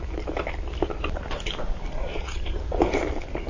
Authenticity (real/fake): fake